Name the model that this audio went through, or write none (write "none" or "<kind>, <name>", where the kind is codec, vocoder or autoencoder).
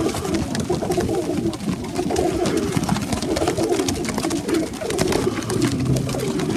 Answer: none